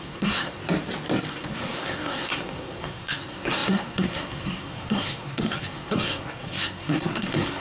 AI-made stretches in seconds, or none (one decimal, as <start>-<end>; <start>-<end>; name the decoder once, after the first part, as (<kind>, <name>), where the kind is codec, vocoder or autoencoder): 0.0-0.6 (codec, SNAC); 1.3-7.6